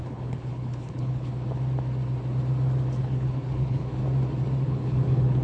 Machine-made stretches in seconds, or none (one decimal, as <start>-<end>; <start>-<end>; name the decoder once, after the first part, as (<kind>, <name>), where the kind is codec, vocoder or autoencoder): 0.0-1.3 (codec, HILCodec); 3.0-4.0; 4.6-5.4